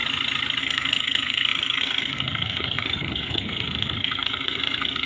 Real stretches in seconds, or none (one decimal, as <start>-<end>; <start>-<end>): 0.0-0.6